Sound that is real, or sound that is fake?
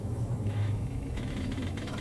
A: fake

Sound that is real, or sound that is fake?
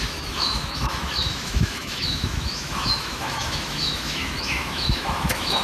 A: fake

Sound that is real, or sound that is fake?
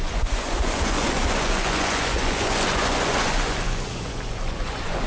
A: fake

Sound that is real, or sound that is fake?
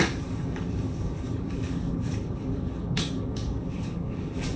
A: fake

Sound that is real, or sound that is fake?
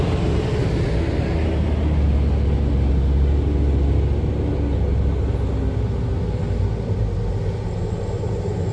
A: real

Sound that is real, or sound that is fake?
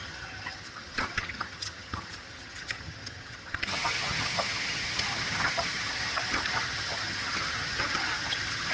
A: fake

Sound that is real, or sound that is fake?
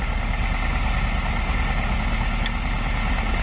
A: real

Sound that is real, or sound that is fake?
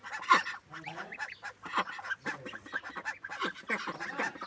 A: real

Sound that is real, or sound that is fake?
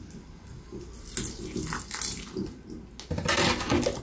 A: real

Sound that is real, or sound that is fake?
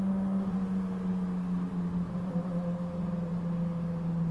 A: real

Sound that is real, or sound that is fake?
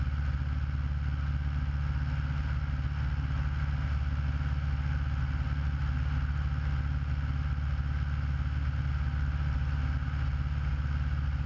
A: real